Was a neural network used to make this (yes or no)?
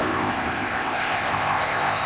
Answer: yes